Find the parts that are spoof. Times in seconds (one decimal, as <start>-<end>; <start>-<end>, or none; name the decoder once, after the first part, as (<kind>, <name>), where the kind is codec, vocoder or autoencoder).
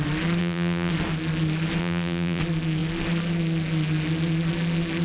0.4-0.9 (vocoder, BigVGAN v2); 1.8-2.4